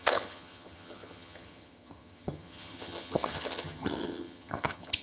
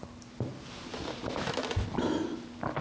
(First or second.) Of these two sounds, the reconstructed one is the first